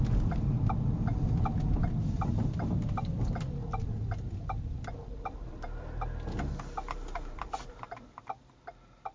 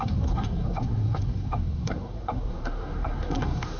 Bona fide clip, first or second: first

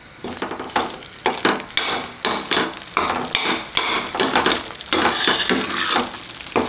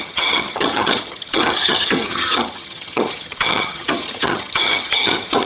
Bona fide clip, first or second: first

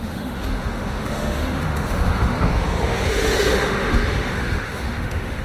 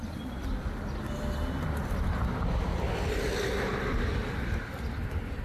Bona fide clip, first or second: second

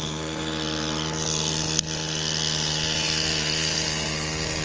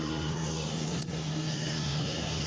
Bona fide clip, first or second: first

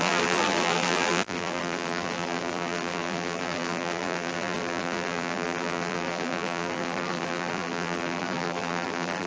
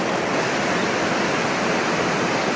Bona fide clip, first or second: second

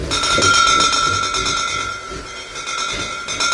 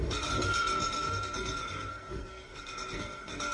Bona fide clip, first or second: first